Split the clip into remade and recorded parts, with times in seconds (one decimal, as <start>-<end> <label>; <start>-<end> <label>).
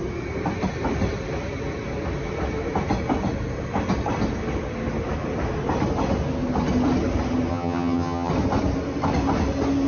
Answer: 0.0-7.5 recorded; 7.5-8.3 remade; 8.3-9.9 recorded